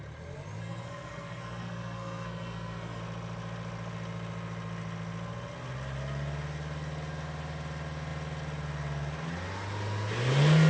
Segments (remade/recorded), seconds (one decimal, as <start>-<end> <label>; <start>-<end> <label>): 0.0-0.6 recorded; 0.6-3.0 remade; 3.0-10.7 recorded

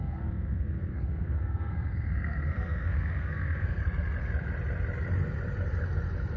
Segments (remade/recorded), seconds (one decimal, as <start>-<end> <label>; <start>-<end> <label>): 0.0-3.8 remade; 3.8-6.4 recorded

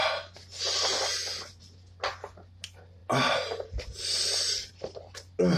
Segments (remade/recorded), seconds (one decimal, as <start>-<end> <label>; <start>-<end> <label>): 0.0-5.6 recorded

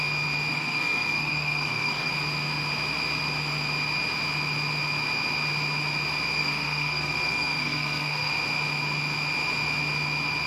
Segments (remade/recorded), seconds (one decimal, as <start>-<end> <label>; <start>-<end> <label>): 0.0-0.5 recorded; 0.5-2.1 remade; 2.1-6.4 recorded; 6.4-8.3 remade; 8.3-10.5 recorded

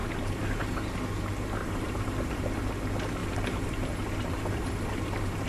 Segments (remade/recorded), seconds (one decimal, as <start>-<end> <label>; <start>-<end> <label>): 0.0-0.6 remade; 0.6-1.6 recorded; 1.6-2.6 remade; 2.6-3.2 recorded; 3.2-5.5 remade

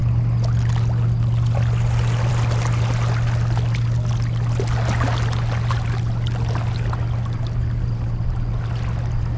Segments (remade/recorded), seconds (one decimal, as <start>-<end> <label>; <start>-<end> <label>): 0.0-9.4 recorded

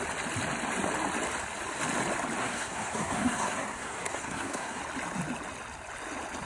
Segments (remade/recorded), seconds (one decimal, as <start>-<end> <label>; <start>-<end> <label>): 0.0-2.4 recorded; 2.4-4.8 remade; 4.8-6.5 recorded

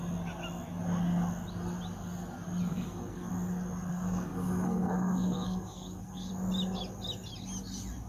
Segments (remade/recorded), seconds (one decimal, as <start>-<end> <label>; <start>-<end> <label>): 0.0-2.7 recorded; 2.7-3.3 remade; 3.3-3.9 recorded; 3.9-6.3 remade; 6.3-8.1 recorded